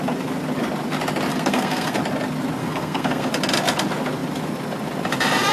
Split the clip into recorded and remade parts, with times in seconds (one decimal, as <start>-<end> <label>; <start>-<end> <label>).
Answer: 0.0-1.3 recorded; 1.3-2.0 remade; 2.0-2.6 recorded; 2.6-3.3 remade; 3.3-5.5 recorded